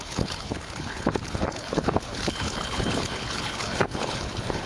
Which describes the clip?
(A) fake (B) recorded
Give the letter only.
A